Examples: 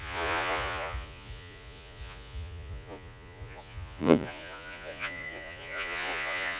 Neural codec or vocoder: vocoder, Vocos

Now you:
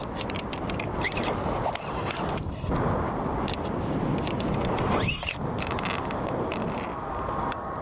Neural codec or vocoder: none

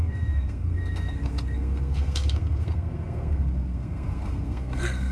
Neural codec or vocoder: codec, SNAC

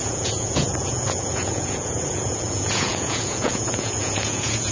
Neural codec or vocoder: vocoder, Vocos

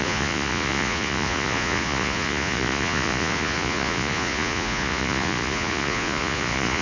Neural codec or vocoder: vocoder, Vocos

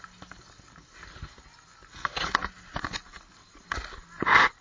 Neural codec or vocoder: none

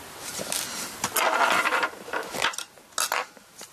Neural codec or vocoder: none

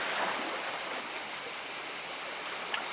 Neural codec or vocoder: none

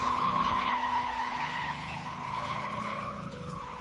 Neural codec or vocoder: codec, HILCodec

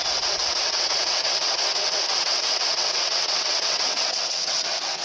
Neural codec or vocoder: vocoder, WaveNeXt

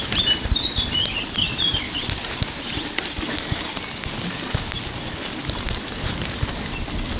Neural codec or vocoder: none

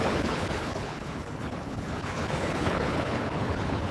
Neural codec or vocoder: codec, HILCodec